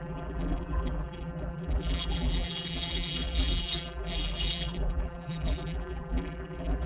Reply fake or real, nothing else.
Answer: fake